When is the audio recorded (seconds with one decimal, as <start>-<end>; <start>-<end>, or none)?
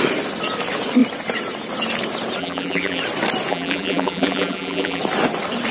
0.0-2.4; 3.0-3.5; 5.0-5.7